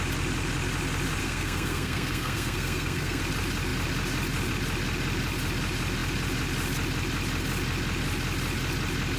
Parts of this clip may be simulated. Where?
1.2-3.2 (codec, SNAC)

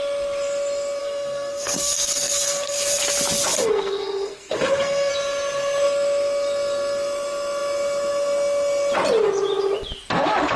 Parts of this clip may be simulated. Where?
1.0-3.0 (codec, SNAC); 3.6-5.1

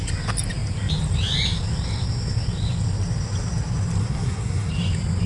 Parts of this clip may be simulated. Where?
4.0-4.7 (codec, SNAC)